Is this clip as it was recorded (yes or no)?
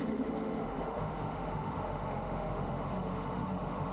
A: no